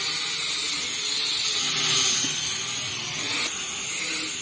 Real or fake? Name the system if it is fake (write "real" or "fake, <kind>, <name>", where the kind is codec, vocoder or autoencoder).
real